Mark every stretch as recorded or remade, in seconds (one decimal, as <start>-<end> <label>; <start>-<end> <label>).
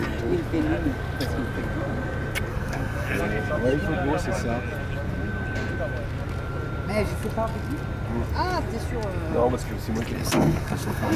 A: 0.0-2.5 recorded; 2.5-3.2 remade; 3.2-10.2 recorded; 10.2-11.2 remade